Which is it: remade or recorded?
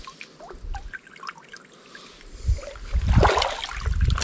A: recorded